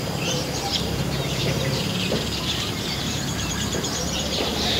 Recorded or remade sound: remade